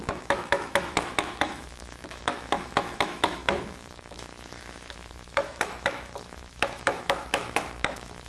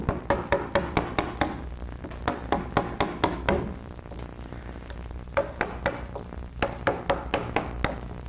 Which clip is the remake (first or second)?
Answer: first